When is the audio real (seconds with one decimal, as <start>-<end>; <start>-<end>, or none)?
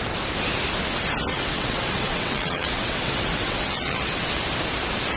0.0-1.3; 4.4-5.2